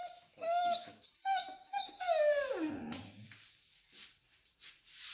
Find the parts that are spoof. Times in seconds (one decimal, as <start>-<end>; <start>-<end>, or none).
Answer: 0.0-1.9